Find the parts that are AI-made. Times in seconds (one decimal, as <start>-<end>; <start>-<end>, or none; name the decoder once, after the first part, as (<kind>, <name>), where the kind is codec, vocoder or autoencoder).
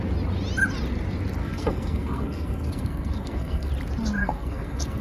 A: 1.4-3.7 (codec, SNAC); 4.2-5.0